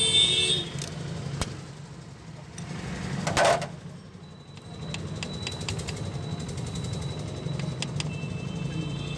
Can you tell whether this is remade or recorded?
recorded